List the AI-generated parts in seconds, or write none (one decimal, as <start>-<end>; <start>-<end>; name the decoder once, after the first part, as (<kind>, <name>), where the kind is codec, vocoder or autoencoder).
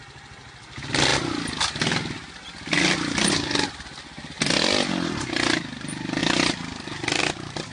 none